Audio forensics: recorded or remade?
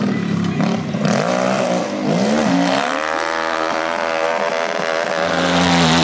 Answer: recorded